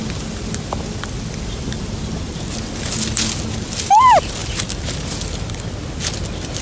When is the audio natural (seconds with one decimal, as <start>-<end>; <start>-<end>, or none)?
0.0-6.6